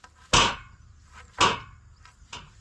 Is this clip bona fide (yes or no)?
yes